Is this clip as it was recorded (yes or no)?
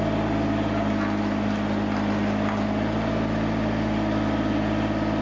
yes